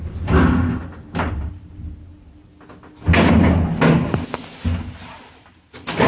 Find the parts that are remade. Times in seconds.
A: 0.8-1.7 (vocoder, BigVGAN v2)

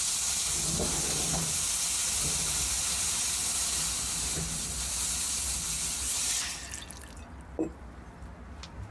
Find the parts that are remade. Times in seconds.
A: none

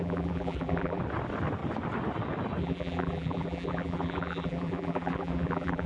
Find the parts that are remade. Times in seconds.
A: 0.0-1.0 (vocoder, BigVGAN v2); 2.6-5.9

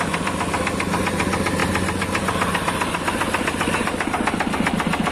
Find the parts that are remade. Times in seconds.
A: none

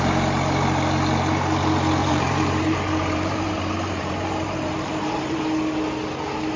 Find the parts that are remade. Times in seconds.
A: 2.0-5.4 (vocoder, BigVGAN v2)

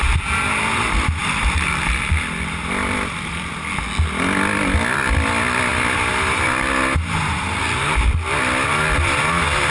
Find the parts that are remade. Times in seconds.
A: 1.2-3.5 (vocoder, BigVGAN v2)